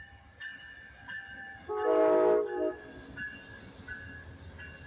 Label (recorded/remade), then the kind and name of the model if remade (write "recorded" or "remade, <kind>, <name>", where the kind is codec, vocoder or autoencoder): recorded